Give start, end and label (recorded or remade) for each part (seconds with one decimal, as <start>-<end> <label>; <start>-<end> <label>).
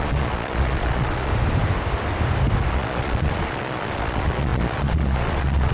0.0-1.3 remade; 1.3-2.7 recorded; 2.7-5.7 remade